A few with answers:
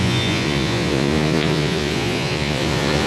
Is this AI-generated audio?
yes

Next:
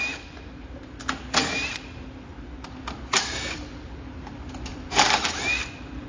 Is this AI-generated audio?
no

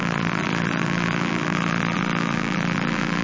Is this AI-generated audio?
yes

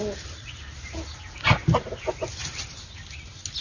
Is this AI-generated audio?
no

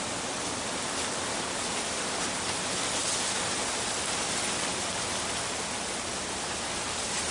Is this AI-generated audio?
no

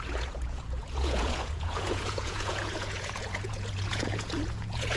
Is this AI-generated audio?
yes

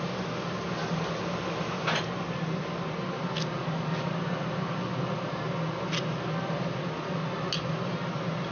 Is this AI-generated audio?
no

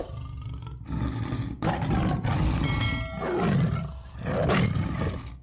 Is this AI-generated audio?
no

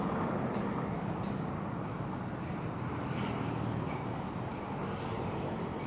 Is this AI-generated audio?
no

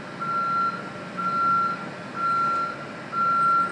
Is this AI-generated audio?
no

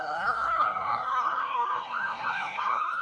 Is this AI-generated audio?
yes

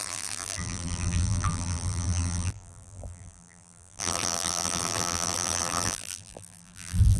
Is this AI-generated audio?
yes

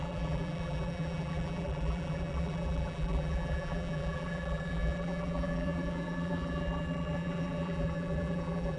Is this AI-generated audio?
yes